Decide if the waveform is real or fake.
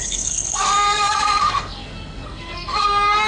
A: fake